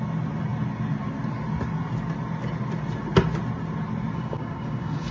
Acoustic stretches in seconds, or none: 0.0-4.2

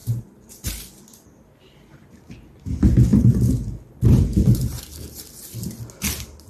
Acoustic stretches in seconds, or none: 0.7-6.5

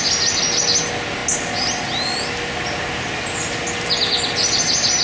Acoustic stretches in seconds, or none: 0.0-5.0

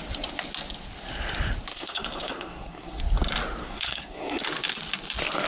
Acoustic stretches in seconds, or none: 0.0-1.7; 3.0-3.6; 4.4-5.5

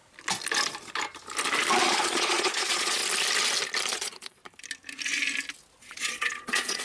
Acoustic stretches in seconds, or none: 0.0-1.8; 3.0-3.9; 4.4-5.8

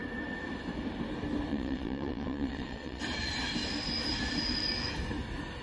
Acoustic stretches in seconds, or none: 0.0-1.5; 3.0-5.6